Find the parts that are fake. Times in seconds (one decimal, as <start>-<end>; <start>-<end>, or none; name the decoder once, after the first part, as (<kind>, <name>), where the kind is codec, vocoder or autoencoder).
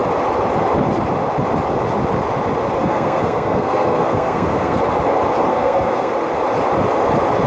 2.8-4.8 (codec, SNAC); 5.5-6.1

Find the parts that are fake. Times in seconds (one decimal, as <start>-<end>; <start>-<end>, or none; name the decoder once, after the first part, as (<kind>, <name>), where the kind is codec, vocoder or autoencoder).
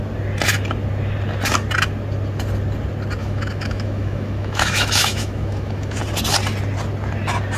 3.2-6.0 (autoencoder, DAC-VAE)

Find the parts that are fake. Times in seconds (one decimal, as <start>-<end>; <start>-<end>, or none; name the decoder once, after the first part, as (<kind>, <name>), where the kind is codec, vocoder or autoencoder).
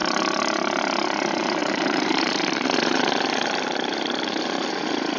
1.6-4.7 (vocoder, BigVGAN v2)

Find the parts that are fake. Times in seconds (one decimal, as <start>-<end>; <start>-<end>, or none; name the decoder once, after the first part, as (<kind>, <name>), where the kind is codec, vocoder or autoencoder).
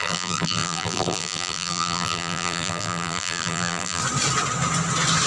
0.0-4.0 (vocoder, BigVGAN v2)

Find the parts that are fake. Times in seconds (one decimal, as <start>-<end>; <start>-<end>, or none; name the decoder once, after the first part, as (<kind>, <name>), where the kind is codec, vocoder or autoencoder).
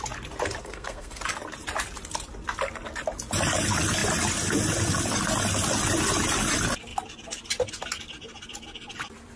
0.6-1.2 (codec, SNAC)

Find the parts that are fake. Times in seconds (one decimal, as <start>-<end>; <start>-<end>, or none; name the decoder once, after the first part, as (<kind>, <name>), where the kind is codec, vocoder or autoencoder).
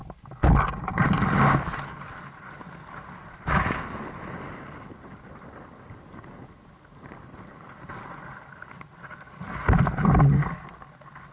none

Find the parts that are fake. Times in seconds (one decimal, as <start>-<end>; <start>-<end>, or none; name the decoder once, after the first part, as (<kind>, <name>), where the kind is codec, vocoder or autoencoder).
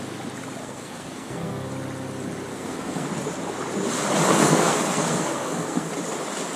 0.6-1.7 (codec, SNAC); 2.5-3.1; 4.3-5.9